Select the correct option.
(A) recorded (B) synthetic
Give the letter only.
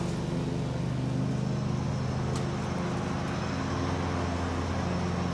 A